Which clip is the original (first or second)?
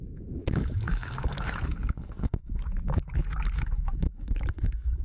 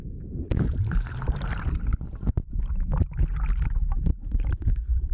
second